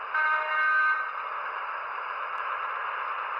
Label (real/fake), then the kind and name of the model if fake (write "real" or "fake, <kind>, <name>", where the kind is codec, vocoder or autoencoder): real